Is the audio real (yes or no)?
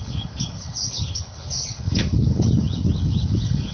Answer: no